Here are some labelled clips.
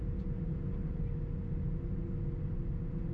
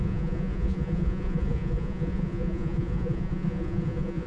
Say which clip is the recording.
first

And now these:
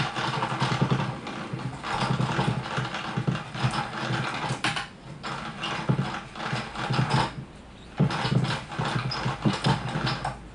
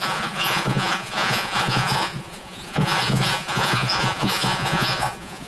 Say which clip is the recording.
first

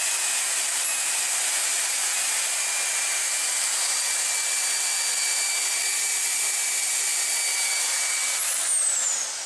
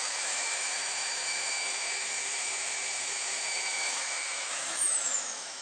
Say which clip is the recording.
first